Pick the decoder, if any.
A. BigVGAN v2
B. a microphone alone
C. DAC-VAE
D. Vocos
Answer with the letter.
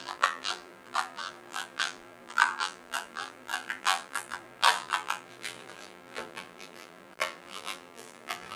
A